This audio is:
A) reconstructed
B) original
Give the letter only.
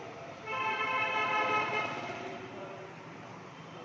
B